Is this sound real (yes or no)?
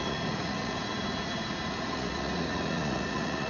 no